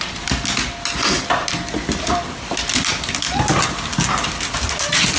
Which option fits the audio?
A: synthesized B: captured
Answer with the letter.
B